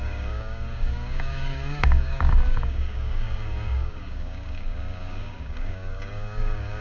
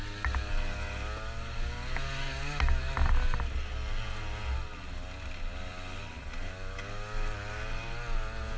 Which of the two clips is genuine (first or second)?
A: second